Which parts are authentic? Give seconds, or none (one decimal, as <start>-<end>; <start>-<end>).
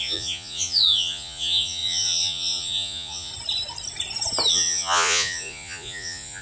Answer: 3.3-4.5